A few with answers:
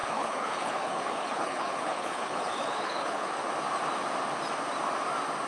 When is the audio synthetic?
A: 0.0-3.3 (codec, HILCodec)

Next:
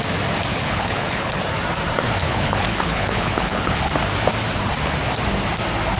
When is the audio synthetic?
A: 0.5-1.4 (codec, HILCodec); 2.2-3.8

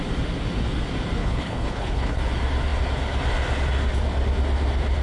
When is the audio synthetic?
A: 1.2-2.2 (codec, HILCodec)

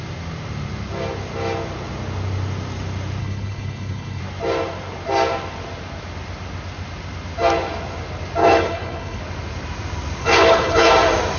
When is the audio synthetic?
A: 3.2-4.2 (codec, HILCodec); 8.4-9.2; 10.2-10.9